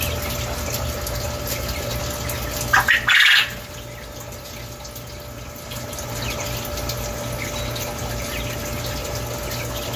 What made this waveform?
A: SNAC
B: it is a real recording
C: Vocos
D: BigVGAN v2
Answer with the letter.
B